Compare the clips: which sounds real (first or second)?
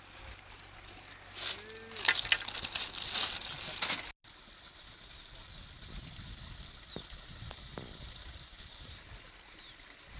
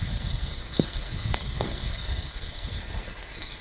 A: first